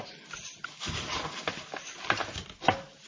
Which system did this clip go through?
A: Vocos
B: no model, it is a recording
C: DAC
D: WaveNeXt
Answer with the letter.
B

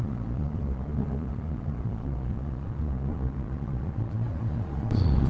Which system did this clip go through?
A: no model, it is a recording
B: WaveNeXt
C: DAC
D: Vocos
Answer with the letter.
D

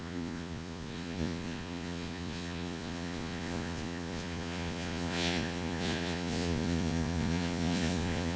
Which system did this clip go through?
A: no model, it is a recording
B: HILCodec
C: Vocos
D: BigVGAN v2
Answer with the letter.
C